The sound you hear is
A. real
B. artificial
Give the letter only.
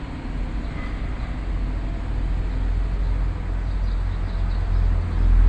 A